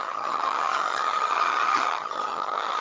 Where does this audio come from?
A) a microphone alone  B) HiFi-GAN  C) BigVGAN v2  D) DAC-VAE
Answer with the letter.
B